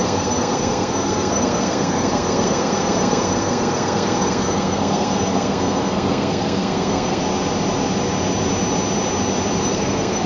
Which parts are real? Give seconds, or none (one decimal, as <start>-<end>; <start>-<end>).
7.2-9.6